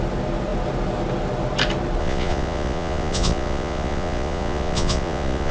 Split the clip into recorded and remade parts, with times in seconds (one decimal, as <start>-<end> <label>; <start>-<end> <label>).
0.0-2.0 recorded; 2.0-5.5 remade